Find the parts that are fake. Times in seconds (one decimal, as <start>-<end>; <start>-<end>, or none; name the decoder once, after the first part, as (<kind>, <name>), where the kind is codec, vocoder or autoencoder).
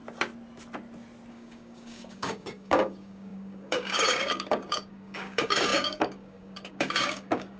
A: 1.3-7.6 (codec, DAC)